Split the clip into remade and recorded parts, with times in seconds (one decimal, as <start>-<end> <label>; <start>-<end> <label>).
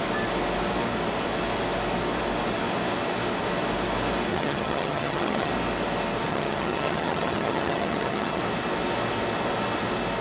0.0-4.3 recorded; 4.3-5.5 remade; 5.5-6.3 recorded; 6.3-8.4 remade; 8.4-10.2 recorded